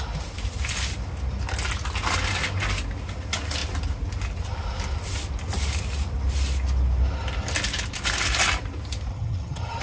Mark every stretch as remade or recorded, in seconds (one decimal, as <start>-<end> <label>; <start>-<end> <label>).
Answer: 0.0-9.1 recorded; 9.1-9.8 remade